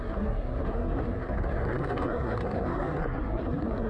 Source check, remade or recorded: remade